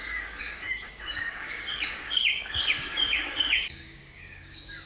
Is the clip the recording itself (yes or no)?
no